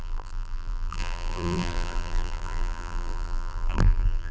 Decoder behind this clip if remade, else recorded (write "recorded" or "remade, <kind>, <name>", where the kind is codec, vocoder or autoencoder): remade, vocoder, BigVGAN v2